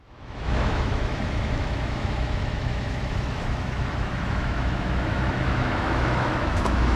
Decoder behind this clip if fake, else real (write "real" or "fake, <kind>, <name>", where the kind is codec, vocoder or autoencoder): fake, autoencoder, DAC-VAE